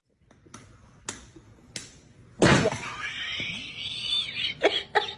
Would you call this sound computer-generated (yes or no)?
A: no